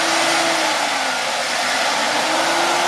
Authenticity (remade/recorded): recorded